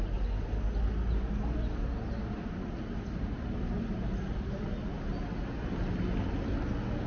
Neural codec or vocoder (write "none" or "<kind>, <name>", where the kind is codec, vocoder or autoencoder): none